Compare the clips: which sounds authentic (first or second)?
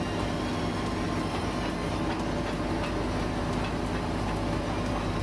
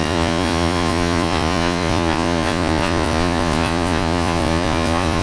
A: first